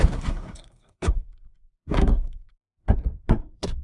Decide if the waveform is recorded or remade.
remade